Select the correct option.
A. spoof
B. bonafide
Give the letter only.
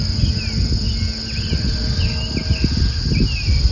B